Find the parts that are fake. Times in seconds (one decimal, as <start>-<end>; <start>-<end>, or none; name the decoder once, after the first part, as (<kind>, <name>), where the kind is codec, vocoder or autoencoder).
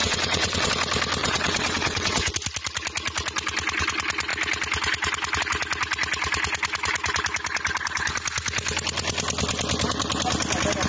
0.0-0.7 (vocoder, WaveNeXt); 1.2-2.3